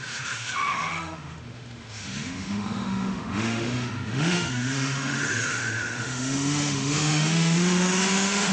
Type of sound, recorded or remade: remade